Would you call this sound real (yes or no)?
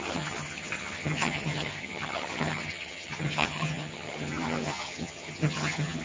no